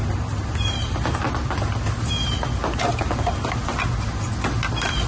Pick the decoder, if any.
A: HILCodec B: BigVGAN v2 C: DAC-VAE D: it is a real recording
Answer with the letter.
D